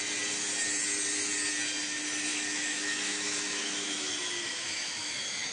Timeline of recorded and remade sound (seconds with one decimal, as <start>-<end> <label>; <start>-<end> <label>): 0.0-2.3 recorded; 2.3-4.1 remade; 4.1-4.5 recorded; 4.5-5.5 remade